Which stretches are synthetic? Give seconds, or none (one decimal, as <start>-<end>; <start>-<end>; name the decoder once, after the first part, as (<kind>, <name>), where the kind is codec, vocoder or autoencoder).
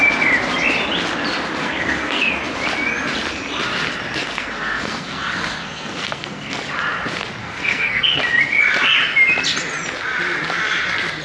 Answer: 1.6-2.3 (codec, SNAC); 4.2-6.6; 7.4-8.2